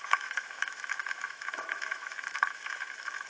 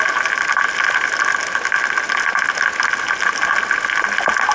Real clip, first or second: second